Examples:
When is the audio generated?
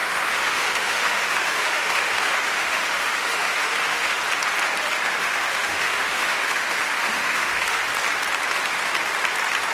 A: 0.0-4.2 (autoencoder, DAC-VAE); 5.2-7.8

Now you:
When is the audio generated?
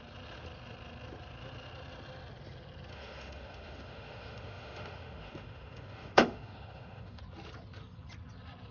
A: 2.9-7.2 (autoencoder, DAC-VAE)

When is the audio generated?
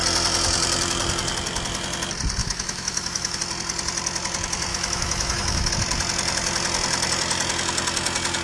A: 2.4-3.4 (autoencoder, DAC-VAE); 4.7-5.7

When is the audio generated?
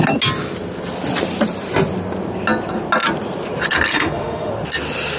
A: 3.9-4.5 (autoencoder, DAC-VAE)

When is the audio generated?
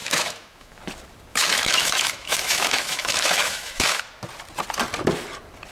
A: 0.0-0.8 (autoencoder, DAC-VAE); 1.3-4.0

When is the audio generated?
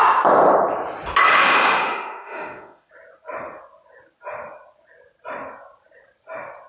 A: 1.3-2.9 (autoencoder, DAC-VAE)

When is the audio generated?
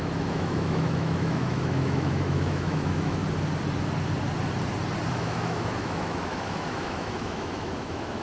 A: 0.0-3.2 (autoencoder, DAC-VAE); 5.1-8.2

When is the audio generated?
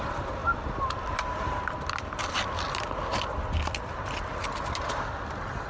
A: none